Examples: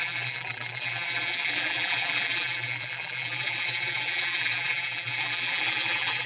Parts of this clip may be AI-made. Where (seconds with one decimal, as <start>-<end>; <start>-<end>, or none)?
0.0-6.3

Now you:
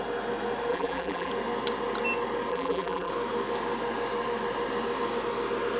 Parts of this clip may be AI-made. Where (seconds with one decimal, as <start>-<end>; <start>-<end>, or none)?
0.7-1.3; 2.5-3.1

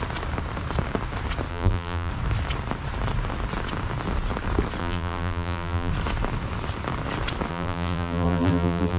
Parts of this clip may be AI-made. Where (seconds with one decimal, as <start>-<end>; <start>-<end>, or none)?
1.5-2.1; 4.8-5.9; 7.5-9.0

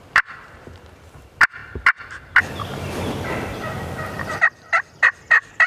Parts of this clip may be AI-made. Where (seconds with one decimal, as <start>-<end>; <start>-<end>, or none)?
none

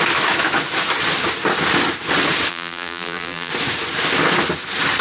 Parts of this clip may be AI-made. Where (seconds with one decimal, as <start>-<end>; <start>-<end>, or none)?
2.5-3.5

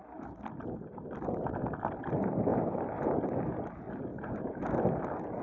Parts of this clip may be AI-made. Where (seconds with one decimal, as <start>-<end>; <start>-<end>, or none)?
2.5-3.2; 4.1-4.6

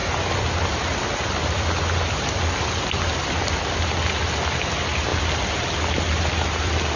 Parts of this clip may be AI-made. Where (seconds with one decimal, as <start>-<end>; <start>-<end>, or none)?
0.0-3.9

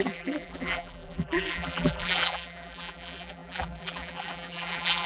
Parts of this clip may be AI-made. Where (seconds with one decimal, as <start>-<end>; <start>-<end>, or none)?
0.0-5.1